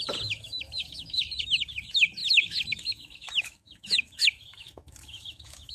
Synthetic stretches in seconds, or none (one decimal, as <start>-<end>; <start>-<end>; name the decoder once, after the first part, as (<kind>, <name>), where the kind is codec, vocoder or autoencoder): 0.0-5.7 (autoencoder, DAC-VAE)